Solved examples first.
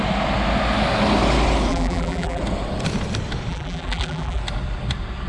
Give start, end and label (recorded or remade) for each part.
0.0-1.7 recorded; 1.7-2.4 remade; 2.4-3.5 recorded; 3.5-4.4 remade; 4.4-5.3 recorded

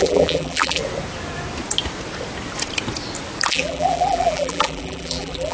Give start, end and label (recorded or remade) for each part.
0.0-0.8 remade; 0.8-3.5 recorded; 3.5-5.5 remade